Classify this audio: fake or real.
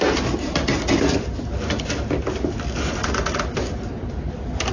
real